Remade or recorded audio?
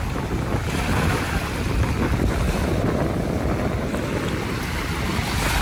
recorded